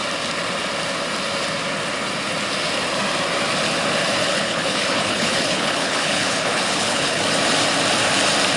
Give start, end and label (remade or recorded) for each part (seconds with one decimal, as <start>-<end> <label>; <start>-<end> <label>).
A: 0.0-4.2 recorded; 4.2-7.2 remade; 7.2-8.6 recorded